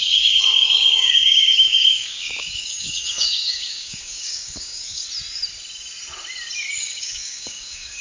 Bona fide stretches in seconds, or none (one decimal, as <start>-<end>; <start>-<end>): 5.0-6.8